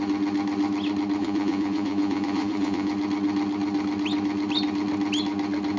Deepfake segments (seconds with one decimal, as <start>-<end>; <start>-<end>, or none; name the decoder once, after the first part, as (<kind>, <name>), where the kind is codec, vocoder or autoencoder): 1.2-2.9 (vocoder, Vocos)